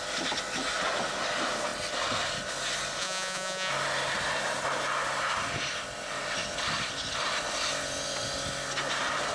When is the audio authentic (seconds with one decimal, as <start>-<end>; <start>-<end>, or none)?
0.0-3.0; 3.7-9.3